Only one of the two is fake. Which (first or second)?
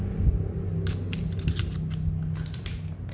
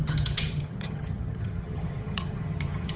second